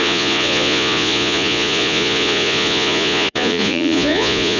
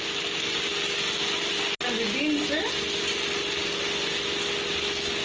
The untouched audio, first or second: second